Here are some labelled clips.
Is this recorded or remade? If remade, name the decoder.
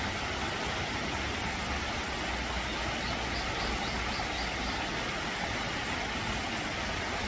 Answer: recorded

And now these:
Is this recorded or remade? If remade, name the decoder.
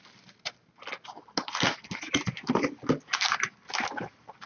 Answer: recorded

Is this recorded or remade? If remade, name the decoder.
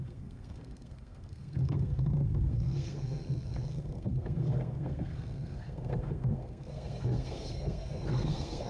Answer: remade, codec, SNAC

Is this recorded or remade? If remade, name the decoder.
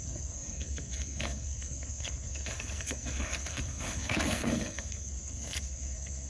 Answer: remade, codec, SNAC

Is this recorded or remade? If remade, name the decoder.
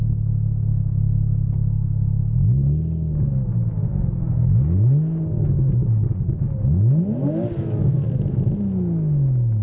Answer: recorded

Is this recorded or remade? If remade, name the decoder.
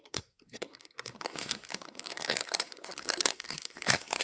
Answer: remade, codec, SNAC